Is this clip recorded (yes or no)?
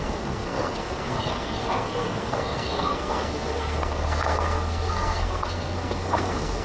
no